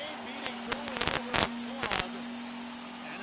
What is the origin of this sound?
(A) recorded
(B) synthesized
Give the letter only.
A